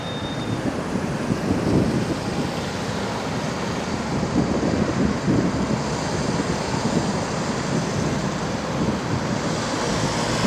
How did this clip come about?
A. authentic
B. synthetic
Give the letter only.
A